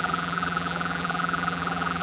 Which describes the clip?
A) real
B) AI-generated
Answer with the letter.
B